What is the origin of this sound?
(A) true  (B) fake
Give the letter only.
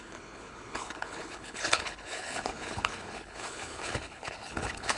B